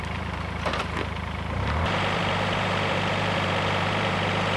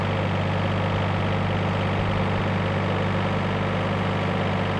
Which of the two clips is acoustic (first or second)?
second